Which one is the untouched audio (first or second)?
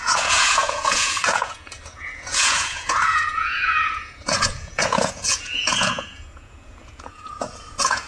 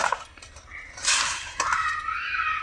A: second